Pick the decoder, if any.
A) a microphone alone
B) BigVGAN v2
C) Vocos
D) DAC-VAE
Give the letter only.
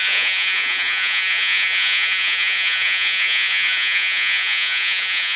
C